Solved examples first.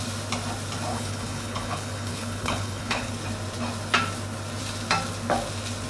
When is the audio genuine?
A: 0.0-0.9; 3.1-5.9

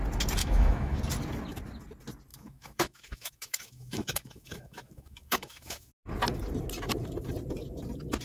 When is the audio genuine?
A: 0.0-0.4; 1.0-2.3; 5.9-8.2

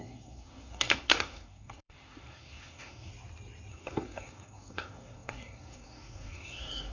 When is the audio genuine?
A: 3.1-3.7

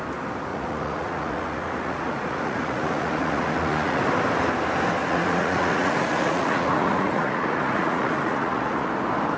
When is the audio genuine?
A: 0.0-0.5; 4.0-5.0; 8.9-9.4

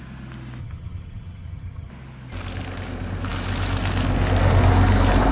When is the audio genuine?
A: 0.0-0.6; 1.9-5.3